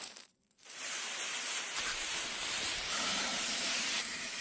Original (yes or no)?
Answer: no